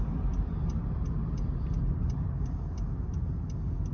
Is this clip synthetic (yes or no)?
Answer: no